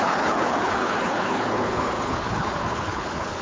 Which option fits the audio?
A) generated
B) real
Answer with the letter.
A